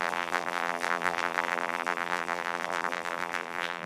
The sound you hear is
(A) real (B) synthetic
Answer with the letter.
B